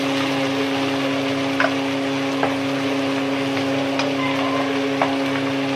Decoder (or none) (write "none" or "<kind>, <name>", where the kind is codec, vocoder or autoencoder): none